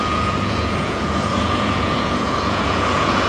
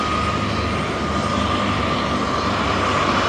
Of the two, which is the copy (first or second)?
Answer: first